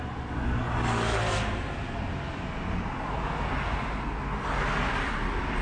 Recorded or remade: recorded